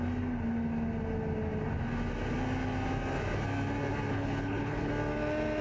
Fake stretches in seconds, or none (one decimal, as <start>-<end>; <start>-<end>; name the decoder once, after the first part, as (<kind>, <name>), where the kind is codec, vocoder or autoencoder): 4.1-4.9 (codec, HILCodec)